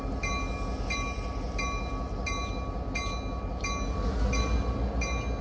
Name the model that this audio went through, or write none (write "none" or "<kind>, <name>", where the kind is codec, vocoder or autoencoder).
none